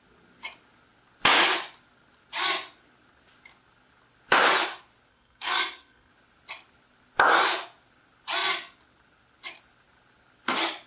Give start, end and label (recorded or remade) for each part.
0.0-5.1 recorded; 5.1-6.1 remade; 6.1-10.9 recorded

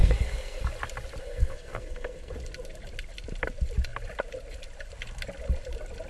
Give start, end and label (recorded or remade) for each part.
0.0-0.6 remade; 0.6-1.2 recorded; 1.2-2.3 remade; 2.3-6.1 recorded

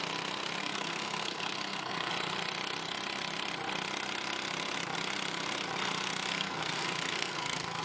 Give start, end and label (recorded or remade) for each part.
0.0-0.6 recorded; 0.6-2.1 remade; 2.1-6.3 recorded; 6.3-7.8 remade

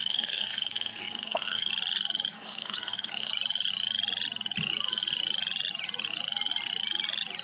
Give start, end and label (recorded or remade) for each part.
0.0-1.7 remade; 1.7-2.3 recorded; 2.3-3.3 remade; 3.3-7.4 recorded

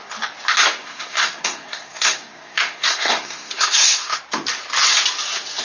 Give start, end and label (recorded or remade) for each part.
0.0-0.8 recorded; 0.8-4.2 remade; 4.2-5.6 recorded

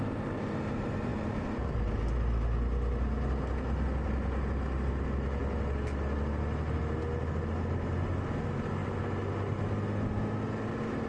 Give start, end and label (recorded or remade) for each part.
0.0-11.1 recorded

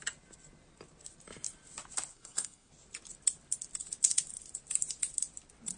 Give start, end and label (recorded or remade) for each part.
0.0-2.1 recorded; 2.1-2.7 remade; 2.7-5.8 recorded

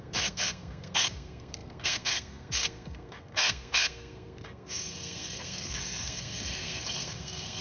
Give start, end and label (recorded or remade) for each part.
0.0-7.6 remade